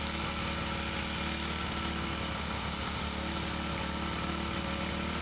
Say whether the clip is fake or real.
real